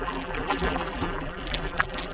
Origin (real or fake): fake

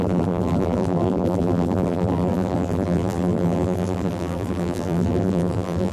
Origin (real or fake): fake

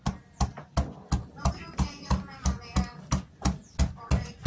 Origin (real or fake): real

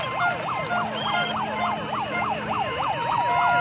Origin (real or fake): real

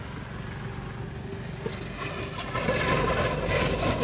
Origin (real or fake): real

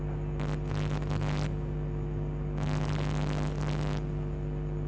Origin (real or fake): real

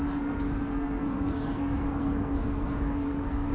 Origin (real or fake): fake